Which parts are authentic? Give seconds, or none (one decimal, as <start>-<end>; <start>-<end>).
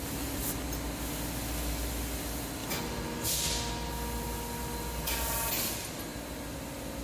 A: 0.0-7.0